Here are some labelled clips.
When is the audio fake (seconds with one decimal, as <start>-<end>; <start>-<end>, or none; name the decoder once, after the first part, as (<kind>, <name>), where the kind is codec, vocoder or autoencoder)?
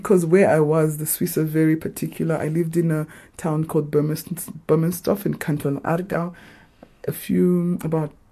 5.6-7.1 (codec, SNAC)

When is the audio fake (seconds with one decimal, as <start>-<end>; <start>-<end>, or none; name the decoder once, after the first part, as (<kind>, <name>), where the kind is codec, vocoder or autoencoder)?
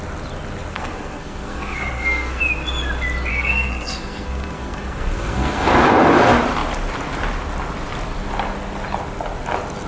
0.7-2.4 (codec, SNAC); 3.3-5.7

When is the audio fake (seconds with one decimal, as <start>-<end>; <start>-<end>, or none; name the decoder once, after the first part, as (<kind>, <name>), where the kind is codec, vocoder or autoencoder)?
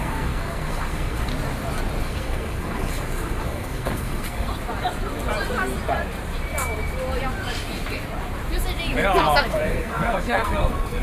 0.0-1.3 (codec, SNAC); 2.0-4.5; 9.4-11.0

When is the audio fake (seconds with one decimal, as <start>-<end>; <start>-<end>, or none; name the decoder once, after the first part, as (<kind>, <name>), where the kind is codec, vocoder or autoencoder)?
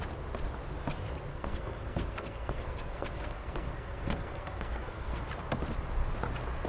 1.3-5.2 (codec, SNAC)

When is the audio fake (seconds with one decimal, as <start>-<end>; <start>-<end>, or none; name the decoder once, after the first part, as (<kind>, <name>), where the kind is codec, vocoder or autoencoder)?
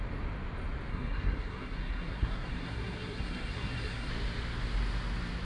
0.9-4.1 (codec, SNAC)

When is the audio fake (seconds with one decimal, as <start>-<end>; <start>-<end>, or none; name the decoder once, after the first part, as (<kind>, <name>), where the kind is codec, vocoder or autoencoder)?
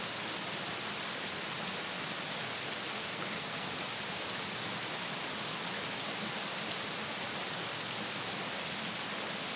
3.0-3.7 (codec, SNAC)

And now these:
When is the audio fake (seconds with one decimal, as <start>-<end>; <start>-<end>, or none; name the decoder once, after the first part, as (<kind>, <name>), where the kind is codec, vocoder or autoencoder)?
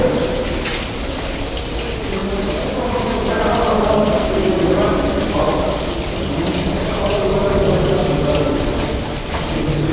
3.8-4.5 (codec, SNAC)